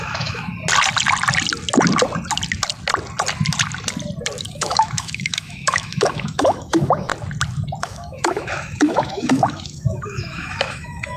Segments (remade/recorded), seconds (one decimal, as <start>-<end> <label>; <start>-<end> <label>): 0.0-0.5 remade; 0.5-4.5 recorded; 4.5-7.1 remade; 7.1-7.8 recorded; 7.8-11.2 remade